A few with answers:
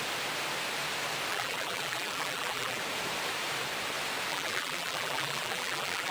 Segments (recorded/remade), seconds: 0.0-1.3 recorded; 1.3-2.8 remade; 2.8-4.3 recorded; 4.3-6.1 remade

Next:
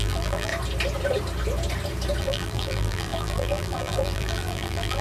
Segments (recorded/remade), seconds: 0.0-0.5 remade; 0.5-2.2 recorded; 2.2-5.0 remade

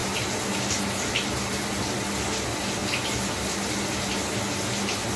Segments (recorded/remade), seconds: 0.0-5.2 recorded

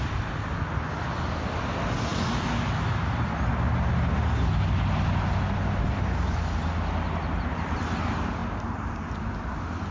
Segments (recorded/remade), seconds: 0.0-9.9 recorded

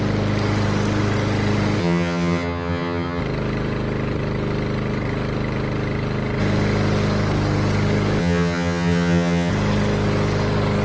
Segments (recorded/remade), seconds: 0.0-1.8 recorded; 1.8-3.2 remade; 3.2-8.2 recorded; 8.2-9.5 remade; 9.5-10.8 recorded